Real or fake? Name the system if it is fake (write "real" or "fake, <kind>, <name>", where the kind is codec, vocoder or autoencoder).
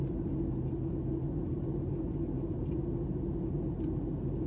real